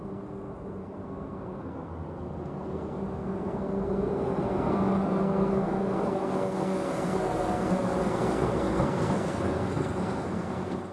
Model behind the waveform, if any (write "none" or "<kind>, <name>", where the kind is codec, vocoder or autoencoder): codec, SNAC